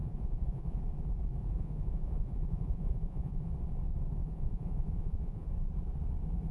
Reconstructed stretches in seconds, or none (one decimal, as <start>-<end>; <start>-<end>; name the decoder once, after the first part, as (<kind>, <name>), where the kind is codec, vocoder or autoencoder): 0.0-0.8 (vocoder, Vocos); 1.4-3.5; 4.2-5.5